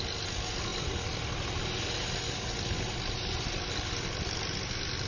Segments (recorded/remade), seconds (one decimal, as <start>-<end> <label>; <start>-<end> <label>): 0.0-5.1 recorded